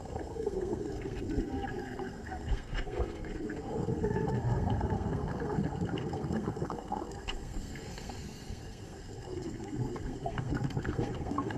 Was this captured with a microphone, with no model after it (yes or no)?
no